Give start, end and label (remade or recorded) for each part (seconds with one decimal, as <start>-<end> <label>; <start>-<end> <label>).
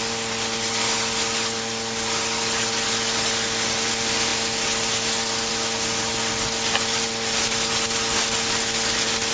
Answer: 0.0-9.3 recorded